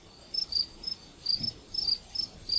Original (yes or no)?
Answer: yes